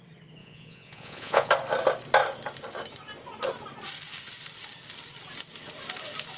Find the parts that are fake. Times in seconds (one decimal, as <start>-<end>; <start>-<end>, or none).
0.4-1.5